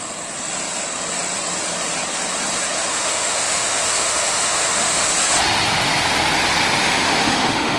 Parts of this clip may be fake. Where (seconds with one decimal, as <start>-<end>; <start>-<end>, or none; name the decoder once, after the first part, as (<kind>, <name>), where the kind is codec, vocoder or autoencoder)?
2.9-5.1 (autoencoder, DAC-VAE); 6.8-7.8